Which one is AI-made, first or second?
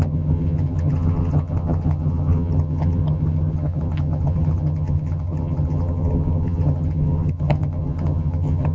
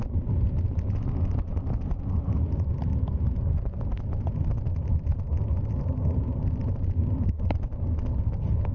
first